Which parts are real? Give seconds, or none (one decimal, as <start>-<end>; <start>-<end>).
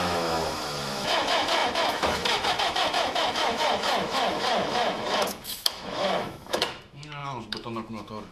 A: none